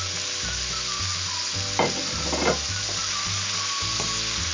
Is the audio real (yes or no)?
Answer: yes